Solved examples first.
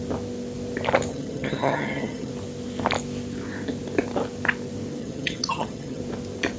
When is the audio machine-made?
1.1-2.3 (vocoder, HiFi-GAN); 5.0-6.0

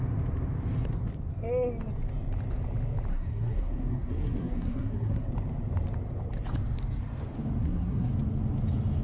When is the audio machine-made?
3.1-5.3 (codec, SNAC); 7.6-8.1

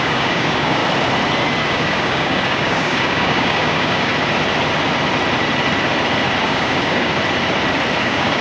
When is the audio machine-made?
0.0-0.8 (codec, DAC); 1.7-4.1; 6.4-7.1; 8.0-8.4

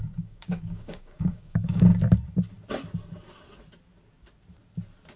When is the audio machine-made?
0.0-1.9 (codec, DAC)

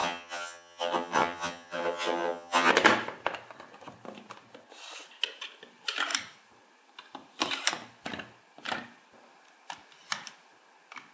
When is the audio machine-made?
0.0-2.7 (vocoder, HiFi-GAN)

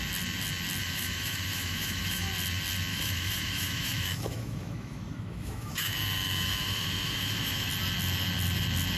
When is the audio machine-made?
0.8-2.3 (autoencoder, DAC-VAE); 2.9-7.7

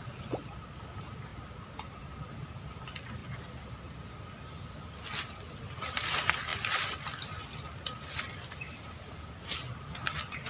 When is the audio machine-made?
none